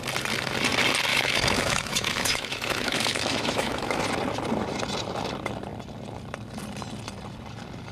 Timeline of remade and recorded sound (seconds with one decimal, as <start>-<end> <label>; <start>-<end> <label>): 0.0-1.1 recorded; 1.1-4.0 remade; 4.0-7.9 recorded